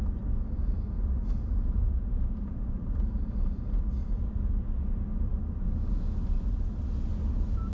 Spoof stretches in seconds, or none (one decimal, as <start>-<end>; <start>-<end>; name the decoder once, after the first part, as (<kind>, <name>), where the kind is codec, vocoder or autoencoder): none